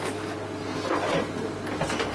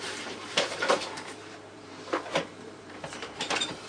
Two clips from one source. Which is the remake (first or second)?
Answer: second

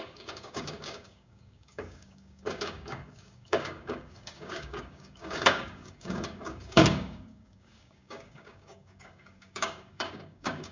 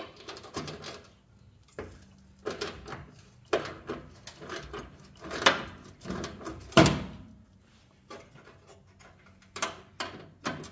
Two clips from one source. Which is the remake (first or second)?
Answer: first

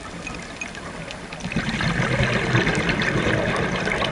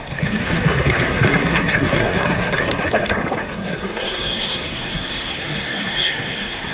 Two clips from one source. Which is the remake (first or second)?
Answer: second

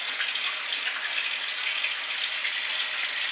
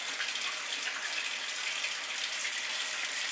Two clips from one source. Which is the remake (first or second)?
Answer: second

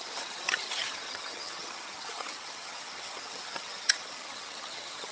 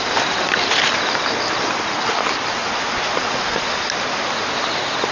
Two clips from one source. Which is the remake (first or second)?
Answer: first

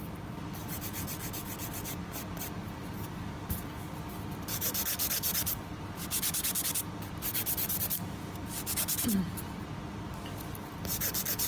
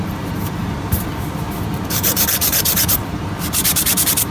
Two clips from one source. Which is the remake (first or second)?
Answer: second